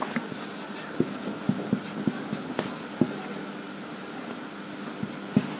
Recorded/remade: recorded